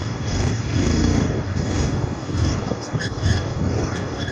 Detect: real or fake fake